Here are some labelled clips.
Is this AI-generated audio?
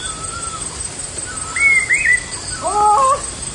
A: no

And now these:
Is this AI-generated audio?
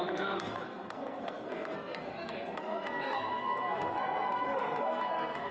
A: yes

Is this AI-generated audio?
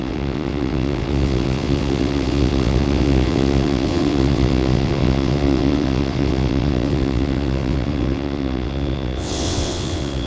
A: yes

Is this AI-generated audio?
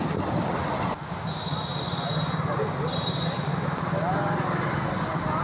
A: no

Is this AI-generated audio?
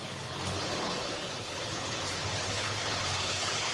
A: yes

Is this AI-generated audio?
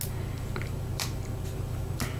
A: no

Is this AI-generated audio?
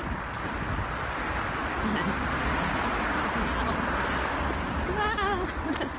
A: no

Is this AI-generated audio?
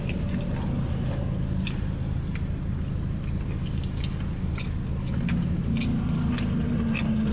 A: no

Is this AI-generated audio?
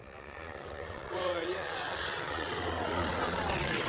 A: yes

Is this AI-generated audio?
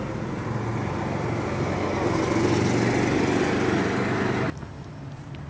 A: no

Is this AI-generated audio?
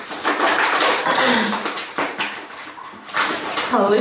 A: yes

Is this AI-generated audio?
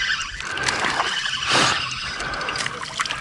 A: no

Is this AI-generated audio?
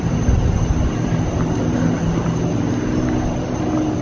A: no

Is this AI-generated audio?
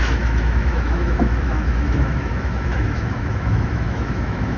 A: yes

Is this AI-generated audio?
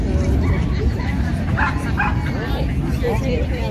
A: no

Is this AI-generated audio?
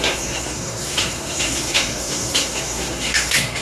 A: yes